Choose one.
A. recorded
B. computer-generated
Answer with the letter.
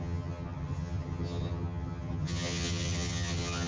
B